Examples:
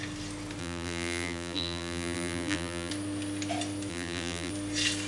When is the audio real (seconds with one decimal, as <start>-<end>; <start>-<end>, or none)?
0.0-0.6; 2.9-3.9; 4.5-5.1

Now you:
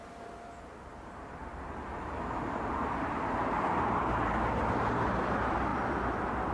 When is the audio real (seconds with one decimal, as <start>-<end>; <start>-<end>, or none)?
0.0-0.6

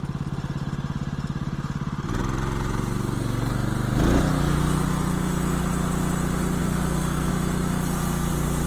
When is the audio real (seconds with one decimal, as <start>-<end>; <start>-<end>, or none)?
0.0-6.6; 7.3-8.7